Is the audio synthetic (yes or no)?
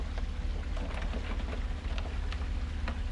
no